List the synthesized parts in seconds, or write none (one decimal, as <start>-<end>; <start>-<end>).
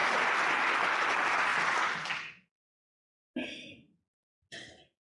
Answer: none